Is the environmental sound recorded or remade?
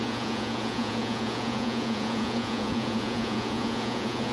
remade